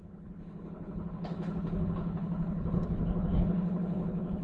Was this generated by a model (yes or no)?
yes